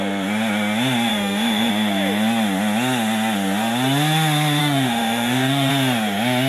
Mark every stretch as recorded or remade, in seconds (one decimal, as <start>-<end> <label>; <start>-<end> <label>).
0.0-1.1 recorded; 1.1-1.7 remade; 1.7-4.6 recorded; 4.6-5.7 remade; 5.7-6.5 recorded